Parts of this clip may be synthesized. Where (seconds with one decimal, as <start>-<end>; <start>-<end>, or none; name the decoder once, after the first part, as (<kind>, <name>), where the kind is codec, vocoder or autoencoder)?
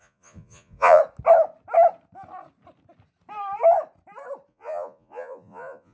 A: 0.0-1.0 (vocoder, Vocos); 4.5-5.9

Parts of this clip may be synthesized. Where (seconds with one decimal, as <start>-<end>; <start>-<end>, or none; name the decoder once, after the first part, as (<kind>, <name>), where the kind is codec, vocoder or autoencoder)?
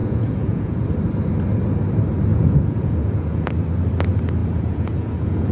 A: 0.0-0.8 (vocoder, Vocos); 2.3-3.5; 4.4-5.5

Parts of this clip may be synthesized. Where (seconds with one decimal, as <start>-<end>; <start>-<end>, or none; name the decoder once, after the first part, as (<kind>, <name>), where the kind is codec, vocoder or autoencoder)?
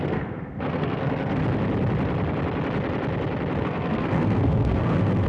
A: 0.0-1.4 (codec, SNAC); 3.6-5.3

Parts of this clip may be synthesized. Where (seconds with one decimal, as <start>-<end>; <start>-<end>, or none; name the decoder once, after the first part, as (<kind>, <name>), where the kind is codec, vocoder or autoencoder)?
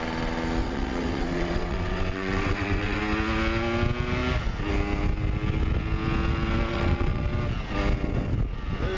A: 0.6-3.0 (vocoder, WaveNeXt); 6.7-7.2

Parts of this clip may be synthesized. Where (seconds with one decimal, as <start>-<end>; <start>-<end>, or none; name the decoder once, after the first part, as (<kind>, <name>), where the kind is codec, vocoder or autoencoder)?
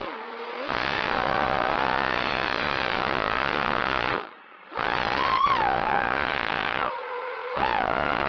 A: 0.0-8.3 (vocoder, Vocos)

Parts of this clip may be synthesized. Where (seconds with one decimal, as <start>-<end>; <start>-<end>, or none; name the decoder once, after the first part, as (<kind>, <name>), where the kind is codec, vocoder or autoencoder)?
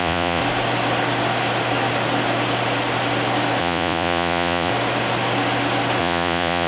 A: 0.0-0.4 (vocoder, Vocos); 3.6-4.7; 6.0-6.7